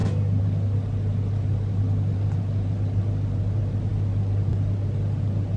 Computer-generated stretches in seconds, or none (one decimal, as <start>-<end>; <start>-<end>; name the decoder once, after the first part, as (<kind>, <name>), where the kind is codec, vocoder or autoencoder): none